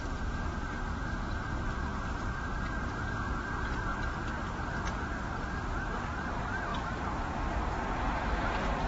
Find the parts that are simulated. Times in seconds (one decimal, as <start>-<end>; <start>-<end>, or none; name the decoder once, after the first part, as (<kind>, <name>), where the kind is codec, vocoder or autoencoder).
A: none